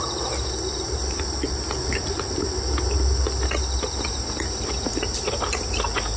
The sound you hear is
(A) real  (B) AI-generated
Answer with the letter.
A